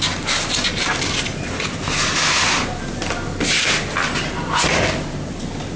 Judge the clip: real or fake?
real